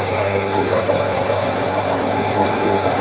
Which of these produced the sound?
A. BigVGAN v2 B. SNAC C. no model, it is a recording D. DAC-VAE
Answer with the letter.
B